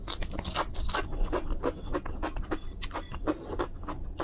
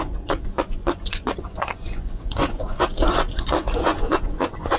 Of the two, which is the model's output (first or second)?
second